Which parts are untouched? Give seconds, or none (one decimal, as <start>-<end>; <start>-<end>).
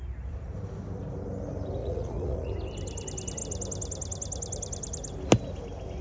0.0-1.8; 2.5-6.0